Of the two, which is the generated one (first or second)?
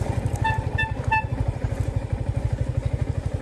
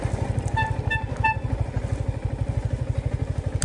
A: first